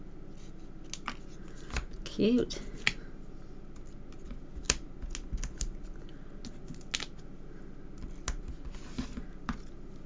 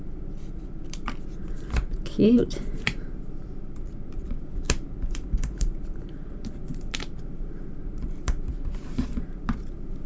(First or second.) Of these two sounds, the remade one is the second